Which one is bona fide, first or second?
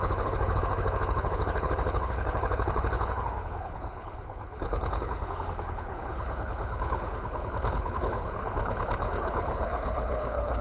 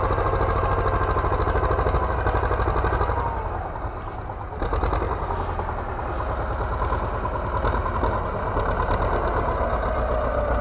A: second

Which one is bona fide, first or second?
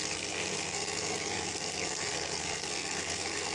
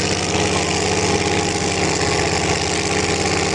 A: second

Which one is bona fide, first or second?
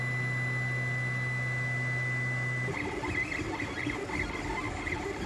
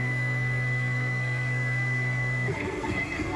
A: first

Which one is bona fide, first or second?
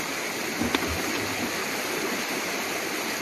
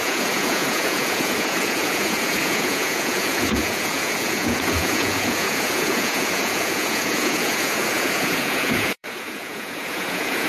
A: first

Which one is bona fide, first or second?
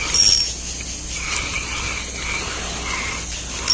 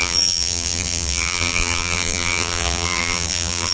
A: first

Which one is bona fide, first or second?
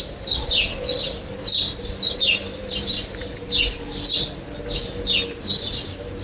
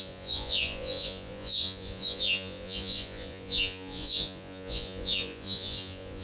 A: first